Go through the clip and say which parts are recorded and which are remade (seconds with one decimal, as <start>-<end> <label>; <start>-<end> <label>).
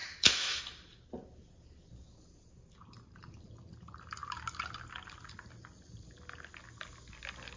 0.0-0.6 remade; 0.6-7.6 recorded